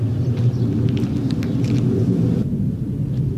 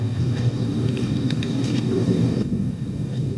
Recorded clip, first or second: first